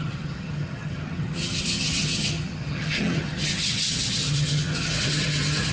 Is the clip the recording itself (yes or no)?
no